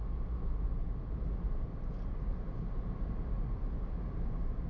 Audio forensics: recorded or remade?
recorded